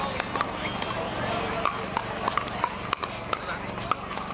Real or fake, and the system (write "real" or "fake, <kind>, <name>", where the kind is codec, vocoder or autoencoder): real